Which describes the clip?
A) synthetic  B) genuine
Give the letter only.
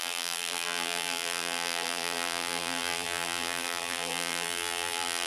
A